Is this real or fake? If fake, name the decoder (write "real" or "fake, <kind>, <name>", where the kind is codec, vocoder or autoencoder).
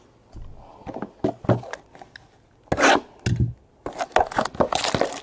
real